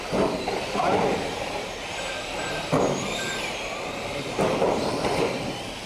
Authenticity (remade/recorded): remade